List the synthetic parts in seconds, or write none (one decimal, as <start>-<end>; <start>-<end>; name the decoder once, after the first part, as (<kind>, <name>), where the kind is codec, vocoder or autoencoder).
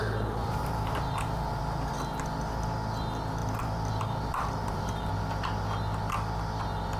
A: 0.4-1.6 (vocoder, BigVGAN v2); 3.4-5.1